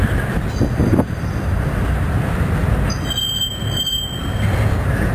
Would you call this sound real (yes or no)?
yes